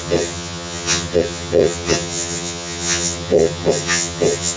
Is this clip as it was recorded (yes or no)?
no